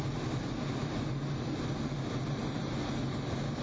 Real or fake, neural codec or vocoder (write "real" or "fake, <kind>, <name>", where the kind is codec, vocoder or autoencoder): real